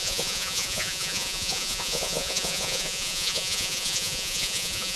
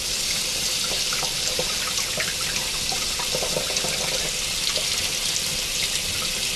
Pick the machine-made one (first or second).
first